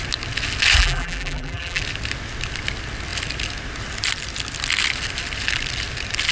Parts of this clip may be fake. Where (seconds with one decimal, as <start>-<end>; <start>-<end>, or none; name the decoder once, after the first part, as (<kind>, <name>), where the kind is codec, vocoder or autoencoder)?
0.8-1.8 (vocoder, BigVGAN v2)